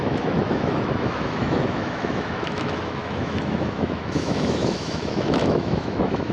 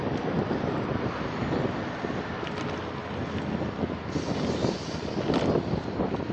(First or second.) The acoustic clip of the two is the second